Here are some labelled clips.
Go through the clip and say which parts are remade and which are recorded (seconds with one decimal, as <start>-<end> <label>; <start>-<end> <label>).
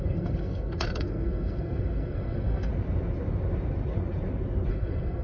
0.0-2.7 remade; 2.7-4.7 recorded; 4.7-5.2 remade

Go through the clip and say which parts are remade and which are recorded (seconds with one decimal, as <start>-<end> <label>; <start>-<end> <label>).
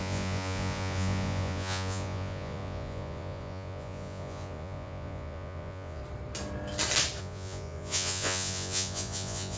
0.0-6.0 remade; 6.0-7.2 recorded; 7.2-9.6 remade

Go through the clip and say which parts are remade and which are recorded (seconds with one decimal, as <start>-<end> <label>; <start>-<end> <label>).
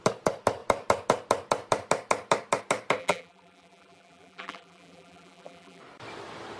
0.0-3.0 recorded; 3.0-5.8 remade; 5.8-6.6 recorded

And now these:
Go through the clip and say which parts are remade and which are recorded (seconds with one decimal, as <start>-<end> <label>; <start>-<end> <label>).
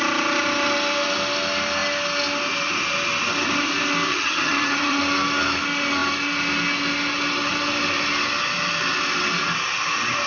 0.0-4.1 recorded; 4.1-5.0 remade; 5.0-10.3 recorded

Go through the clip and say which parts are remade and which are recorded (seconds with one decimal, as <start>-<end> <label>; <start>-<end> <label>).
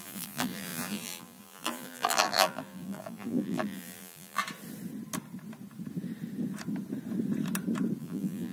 0.0-4.4 remade; 4.4-8.0 recorded; 8.0-8.5 remade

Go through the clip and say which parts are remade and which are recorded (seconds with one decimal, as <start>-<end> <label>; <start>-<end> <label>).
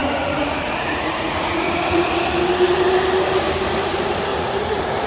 0.0-2.2 remade; 2.2-4.3 recorded; 4.3-5.1 remade